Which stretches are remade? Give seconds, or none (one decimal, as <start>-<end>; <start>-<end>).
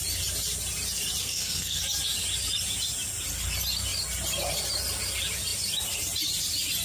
1.2-1.8